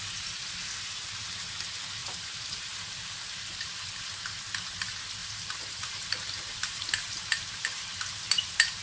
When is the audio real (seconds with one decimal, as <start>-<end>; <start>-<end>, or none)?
0.0-2.0; 3.8-5.2